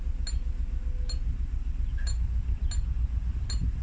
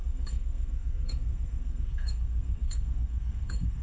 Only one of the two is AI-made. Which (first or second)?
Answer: second